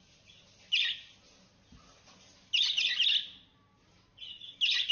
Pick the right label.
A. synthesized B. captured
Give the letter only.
B